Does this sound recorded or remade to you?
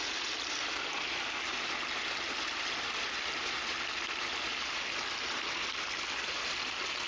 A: recorded